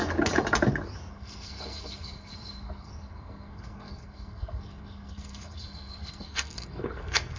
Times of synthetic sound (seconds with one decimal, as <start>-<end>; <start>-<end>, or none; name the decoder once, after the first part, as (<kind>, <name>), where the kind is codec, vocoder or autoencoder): 1.1-7.4 (codec, SNAC)